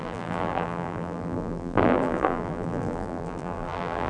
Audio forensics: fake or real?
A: fake